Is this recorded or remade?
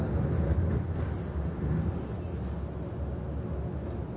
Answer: recorded